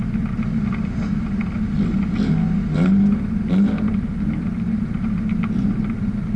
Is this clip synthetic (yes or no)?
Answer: no